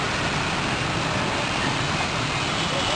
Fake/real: real